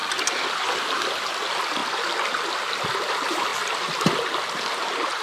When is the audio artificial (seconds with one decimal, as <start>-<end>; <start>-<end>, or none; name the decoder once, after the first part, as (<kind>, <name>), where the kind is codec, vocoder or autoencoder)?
none